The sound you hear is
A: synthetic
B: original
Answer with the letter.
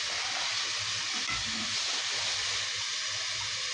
A